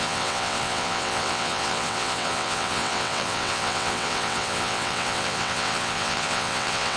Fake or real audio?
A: fake